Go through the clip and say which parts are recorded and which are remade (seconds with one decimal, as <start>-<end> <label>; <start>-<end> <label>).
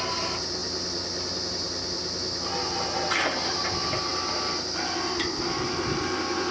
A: 0.0-6.5 recorded